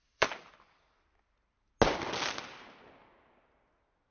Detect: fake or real real